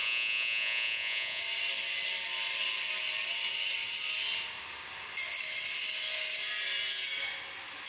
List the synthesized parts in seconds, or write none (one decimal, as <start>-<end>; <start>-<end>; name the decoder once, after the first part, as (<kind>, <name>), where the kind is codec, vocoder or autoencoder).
0.0-1.4 (vocoder, Vocos)